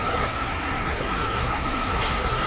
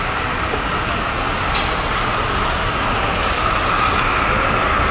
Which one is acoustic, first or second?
second